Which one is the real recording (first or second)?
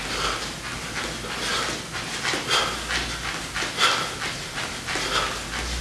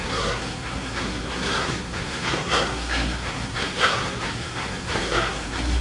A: first